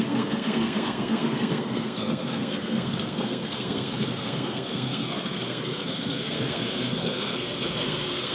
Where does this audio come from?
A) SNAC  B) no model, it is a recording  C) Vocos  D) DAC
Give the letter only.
A